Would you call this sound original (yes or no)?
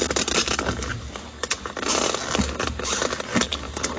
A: yes